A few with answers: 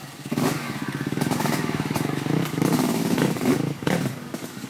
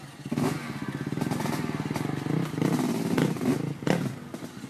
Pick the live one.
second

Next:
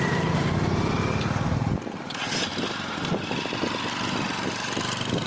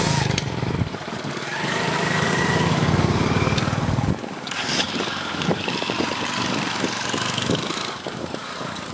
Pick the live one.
first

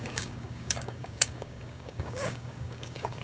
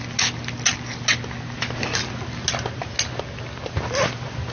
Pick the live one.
second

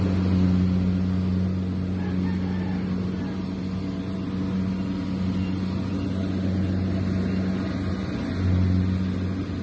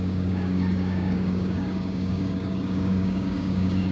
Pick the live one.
first